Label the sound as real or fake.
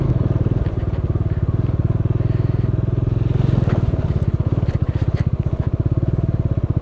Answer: real